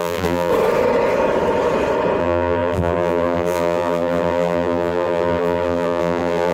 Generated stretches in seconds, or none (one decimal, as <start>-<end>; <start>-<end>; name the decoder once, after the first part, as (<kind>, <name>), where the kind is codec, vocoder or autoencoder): 0.0-0.5 (vocoder, BigVGAN v2); 2.2-6.5